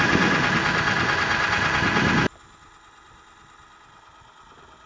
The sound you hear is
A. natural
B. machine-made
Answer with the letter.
A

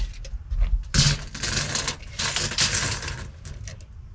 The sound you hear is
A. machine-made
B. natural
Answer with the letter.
B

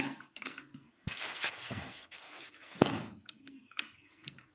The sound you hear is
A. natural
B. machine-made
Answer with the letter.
B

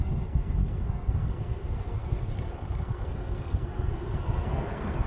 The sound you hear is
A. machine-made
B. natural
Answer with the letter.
A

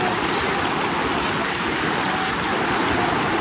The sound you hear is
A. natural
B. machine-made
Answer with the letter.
A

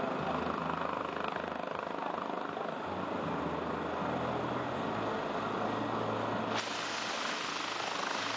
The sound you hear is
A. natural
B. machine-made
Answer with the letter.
A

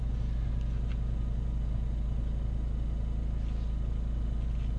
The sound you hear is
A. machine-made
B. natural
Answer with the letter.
B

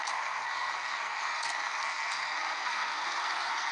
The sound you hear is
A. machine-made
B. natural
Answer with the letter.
A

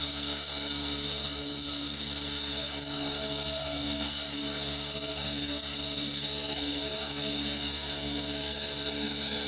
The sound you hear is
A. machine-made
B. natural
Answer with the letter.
A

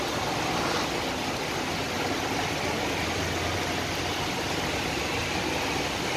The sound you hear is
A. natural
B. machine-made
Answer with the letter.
A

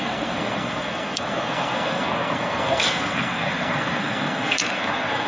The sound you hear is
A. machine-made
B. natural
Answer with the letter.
A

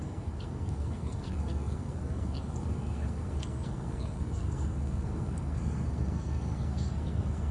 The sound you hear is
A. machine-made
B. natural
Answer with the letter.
A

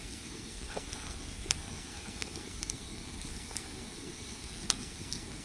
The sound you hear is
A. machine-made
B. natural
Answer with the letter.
A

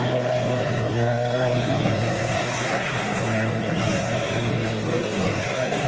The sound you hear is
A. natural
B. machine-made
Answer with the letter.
B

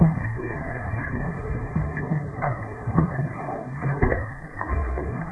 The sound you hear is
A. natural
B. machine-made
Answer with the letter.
B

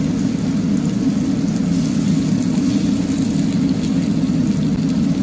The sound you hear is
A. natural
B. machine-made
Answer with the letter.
A